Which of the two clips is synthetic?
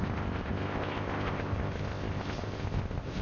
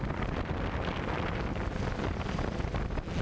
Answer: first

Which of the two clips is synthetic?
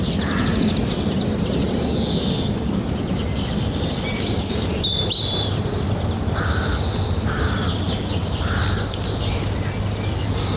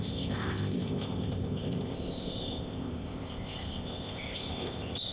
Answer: second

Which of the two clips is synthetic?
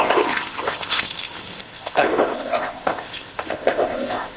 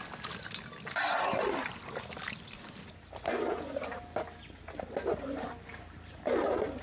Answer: first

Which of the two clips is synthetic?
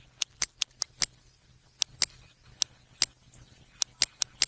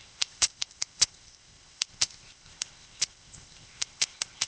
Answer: second